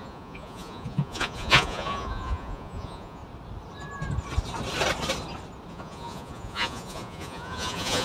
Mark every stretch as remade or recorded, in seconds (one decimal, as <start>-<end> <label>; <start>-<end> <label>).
0.0-3.2 remade; 3.2-5.7 recorded; 5.7-8.0 remade